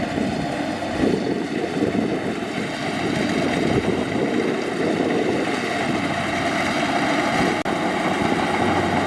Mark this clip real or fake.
real